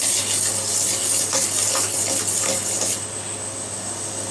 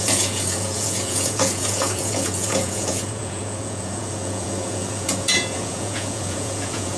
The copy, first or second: second